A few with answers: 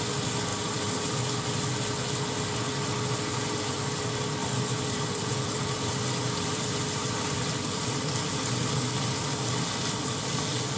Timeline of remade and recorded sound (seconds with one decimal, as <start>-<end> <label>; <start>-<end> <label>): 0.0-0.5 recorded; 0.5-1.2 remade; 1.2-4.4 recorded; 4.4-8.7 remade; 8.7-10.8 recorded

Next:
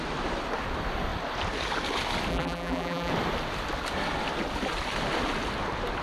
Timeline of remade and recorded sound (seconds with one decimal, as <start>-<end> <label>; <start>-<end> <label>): 0.0-2.3 recorded; 2.3-3.1 remade; 3.1-6.0 recorded

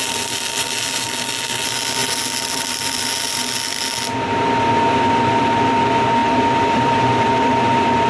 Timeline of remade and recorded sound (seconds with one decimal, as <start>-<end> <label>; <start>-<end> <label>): 0.0-6.2 recorded; 6.2-7.6 remade; 7.6-8.1 recorded

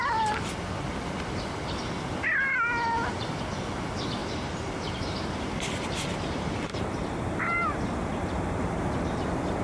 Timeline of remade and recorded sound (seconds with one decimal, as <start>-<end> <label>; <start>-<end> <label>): 0.0-4.2 recorded; 4.2-9.2 remade; 9.2-9.6 recorded

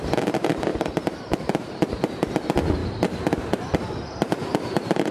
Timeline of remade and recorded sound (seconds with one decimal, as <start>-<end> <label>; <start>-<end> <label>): 0.0-0.7 recorded; 0.7-1.9 remade; 1.9-2.8 recorded; 2.8-5.1 remade